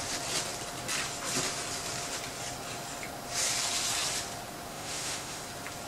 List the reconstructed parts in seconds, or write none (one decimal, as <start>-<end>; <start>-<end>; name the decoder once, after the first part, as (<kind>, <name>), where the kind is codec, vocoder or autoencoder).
4.7-5.4 (autoencoder, DAC-VAE)